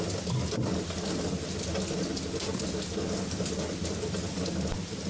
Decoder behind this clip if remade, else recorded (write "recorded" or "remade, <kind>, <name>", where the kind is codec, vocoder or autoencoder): recorded